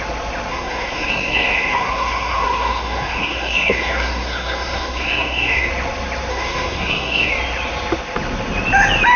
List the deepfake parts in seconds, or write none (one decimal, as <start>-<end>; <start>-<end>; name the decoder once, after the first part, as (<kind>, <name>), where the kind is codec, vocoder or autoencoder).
0.5-5.7 (codec, SNAC); 6.3-7.3